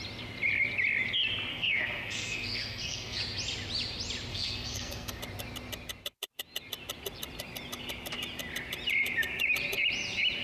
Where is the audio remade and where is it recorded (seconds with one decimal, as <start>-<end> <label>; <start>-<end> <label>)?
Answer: 0.0-1.5 recorded; 1.5-3.2 remade; 3.2-4.3 recorded; 4.3-5.2 remade; 5.2-10.4 recorded